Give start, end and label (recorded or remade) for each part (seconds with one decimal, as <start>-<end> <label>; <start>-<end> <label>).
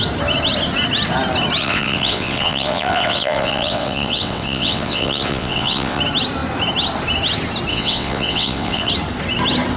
0.0-1.6 recorded; 1.6-6.0 remade; 6.0-7.7 recorded; 7.7-8.9 remade; 8.9-9.8 recorded